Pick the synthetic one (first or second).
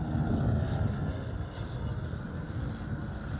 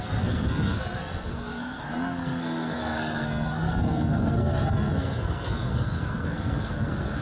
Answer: second